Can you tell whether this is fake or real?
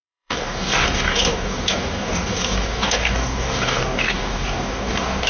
fake